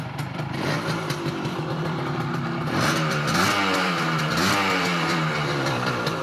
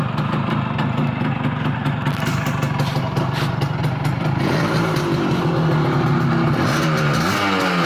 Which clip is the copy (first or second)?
first